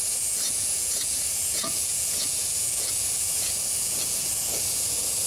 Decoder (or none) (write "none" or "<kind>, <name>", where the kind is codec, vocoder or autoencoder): vocoder, Vocos